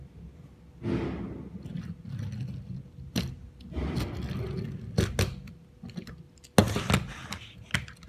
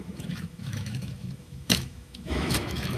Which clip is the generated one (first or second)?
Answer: second